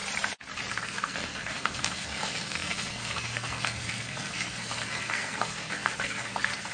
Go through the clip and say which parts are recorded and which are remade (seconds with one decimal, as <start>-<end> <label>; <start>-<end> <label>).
0.0-0.7 recorded; 0.7-6.7 remade